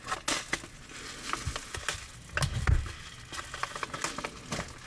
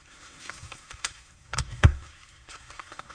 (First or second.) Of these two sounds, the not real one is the second